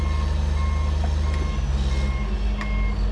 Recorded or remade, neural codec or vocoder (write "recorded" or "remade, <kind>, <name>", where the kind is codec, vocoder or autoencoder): recorded